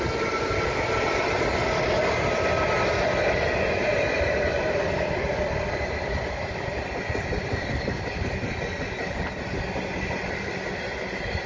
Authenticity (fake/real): real